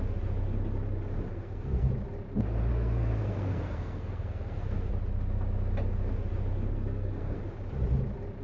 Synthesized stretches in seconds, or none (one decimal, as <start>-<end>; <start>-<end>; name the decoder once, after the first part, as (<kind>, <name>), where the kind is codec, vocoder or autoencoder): 1.3-1.9 (codec, SNAC); 2.7-4.9; 6.7-7.4